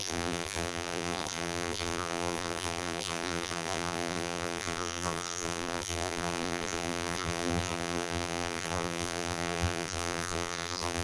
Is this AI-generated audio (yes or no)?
yes